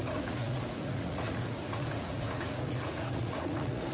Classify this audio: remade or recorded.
remade